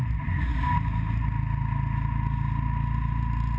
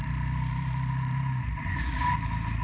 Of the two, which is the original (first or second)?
first